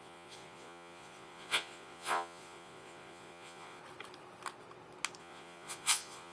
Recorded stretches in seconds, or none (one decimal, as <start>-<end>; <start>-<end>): 3.8-5.2